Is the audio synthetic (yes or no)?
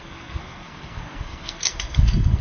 yes